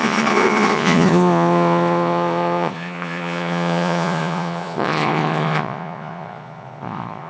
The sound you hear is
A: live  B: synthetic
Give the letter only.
B